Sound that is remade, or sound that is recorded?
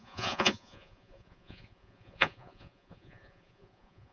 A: remade